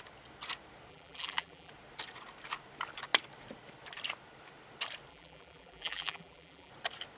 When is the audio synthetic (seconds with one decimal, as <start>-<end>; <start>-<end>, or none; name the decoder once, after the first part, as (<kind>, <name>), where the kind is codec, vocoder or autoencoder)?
0.9-1.7 (vocoder, BigVGAN v2); 5.1-6.7